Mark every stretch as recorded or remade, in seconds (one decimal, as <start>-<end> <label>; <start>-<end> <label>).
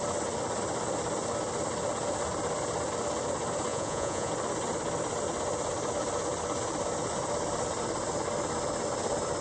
0.0-3.7 recorded; 3.7-4.3 remade; 4.3-9.4 recorded